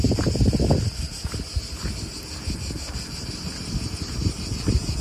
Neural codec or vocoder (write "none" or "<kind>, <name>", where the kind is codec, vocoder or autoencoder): none